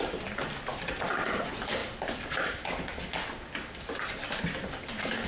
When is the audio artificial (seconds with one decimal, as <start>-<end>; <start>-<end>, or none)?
none

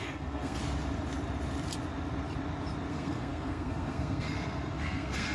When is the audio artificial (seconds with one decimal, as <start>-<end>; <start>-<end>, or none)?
0.0-0.6; 2.9-5.3

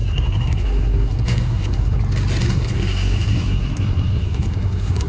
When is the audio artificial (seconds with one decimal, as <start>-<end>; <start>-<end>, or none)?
0.0-2.0; 2.4-5.1

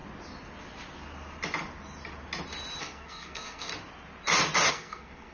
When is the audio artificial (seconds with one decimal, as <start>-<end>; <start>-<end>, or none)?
2.8-3.7; 4.7-5.3

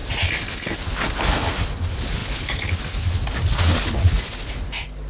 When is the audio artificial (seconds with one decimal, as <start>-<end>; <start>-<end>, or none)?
none

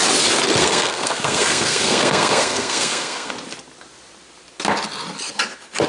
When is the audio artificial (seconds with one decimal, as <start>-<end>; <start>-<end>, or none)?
0.6-3.3